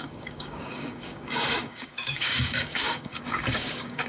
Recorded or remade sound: remade